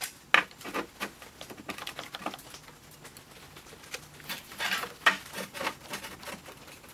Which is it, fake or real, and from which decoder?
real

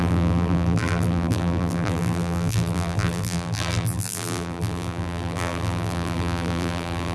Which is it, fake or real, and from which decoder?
fake, vocoder, BigVGAN v2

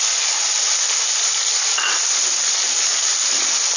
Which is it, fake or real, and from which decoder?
real